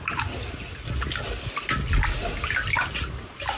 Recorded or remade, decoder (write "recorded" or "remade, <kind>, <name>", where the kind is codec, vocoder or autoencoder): recorded